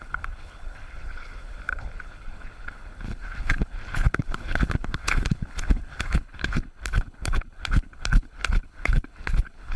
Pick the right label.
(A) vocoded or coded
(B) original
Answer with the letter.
A